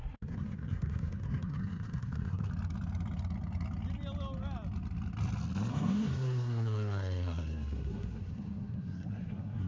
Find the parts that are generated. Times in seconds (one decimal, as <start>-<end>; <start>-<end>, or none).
0.0-2.5; 5.7-9.7

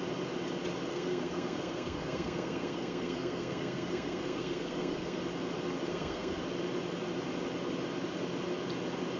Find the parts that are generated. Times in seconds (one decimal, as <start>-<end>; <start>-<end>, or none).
0.9-5.2; 5.9-6.4

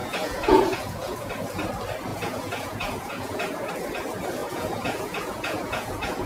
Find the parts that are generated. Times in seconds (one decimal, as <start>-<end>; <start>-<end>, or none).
0.0-1.3; 2.1-3.7; 4.4-6.3

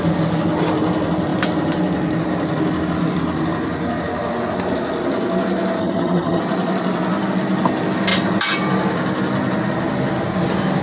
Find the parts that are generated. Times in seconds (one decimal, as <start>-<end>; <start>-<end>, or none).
5.8-6.4

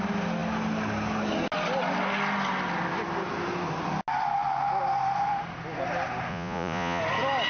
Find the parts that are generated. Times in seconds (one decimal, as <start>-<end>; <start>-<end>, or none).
6.3-7.0